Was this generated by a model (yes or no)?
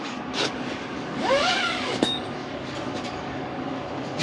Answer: yes